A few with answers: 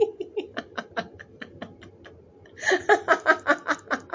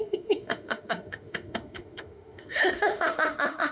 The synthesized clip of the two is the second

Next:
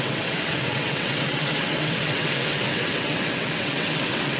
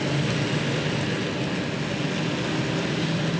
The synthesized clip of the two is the first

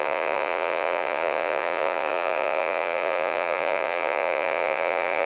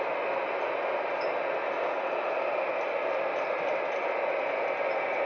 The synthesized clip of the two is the first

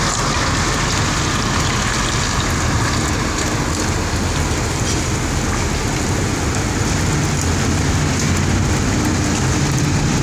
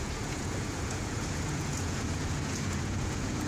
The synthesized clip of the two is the second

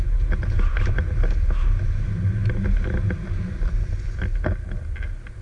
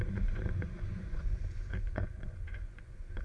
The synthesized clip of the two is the second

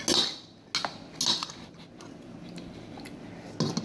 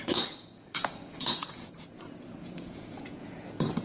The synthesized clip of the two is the second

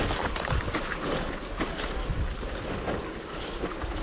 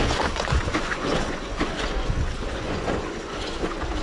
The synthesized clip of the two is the second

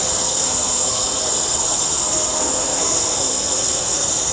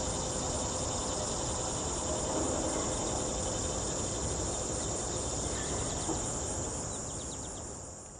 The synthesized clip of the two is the first